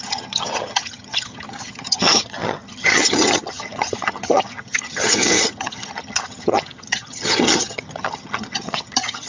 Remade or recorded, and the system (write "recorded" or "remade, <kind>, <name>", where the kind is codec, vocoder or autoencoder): remade, vocoder, HiFi-GAN